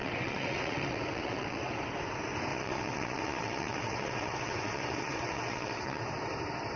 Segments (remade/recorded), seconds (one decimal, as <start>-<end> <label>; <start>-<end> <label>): 0.0-1.7 remade; 1.7-2.5 recorded; 2.5-6.0 remade; 6.0-6.8 recorded